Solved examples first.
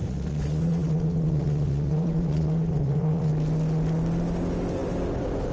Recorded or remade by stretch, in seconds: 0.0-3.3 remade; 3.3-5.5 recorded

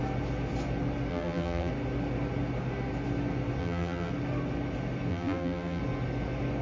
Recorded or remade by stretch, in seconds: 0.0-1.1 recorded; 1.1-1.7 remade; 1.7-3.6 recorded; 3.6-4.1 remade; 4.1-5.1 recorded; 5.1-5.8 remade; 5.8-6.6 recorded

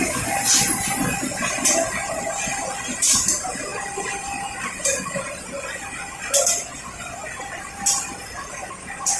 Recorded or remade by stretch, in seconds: 0.0-9.2 recorded

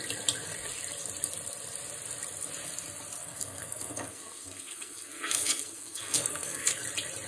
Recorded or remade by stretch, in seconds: 0.0-3.2 recorded; 3.2-6.8 remade; 6.8-7.3 recorded

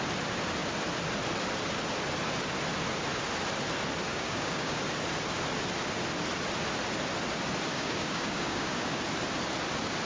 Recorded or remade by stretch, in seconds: 0.0-4.1 recorded; 4.1-4.8 remade; 4.8-7.7 recorded; 7.7-9.0 remade; 9.0-10.0 recorded